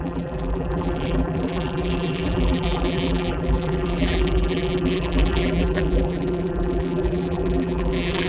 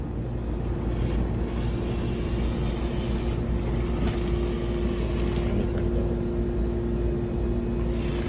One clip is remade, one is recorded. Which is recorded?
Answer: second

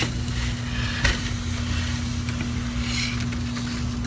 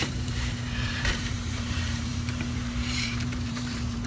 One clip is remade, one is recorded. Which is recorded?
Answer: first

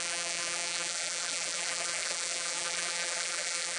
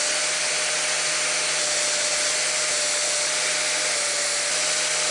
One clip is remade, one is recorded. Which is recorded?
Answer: second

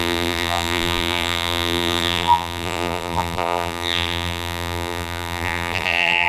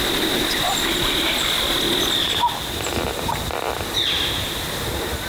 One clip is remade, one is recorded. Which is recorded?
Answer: second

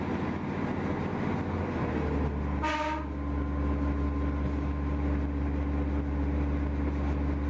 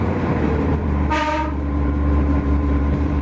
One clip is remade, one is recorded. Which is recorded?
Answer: first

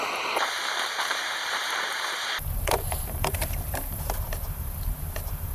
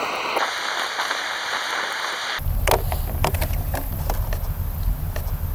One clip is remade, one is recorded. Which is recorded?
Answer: second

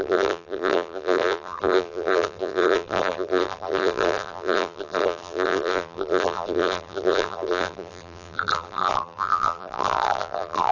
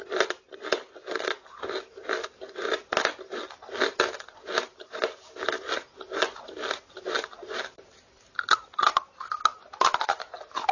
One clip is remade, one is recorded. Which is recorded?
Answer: second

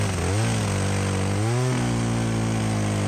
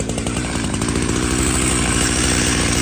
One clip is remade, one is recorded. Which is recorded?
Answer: first